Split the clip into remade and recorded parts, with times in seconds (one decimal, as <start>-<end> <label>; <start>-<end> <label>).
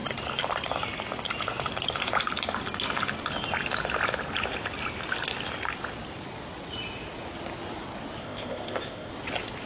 0.0-8.2 recorded; 8.2-9.1 remade; 9.1-9.7 recorded